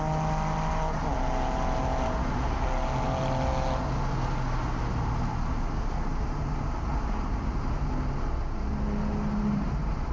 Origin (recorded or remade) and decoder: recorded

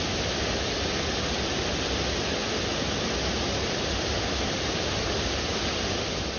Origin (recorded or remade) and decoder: recorded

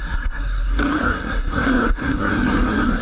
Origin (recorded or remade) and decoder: remade, codec, SNAC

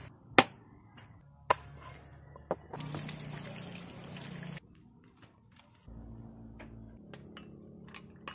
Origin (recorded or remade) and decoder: recorded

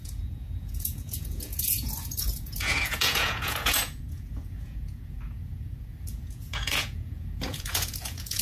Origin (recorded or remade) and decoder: remade, vocoder, Vocos